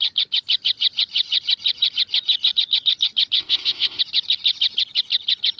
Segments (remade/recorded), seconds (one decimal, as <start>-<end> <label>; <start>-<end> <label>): 0.0-3.4 recorded; 3.4-4.0 remade; 4.0-5.6 recorded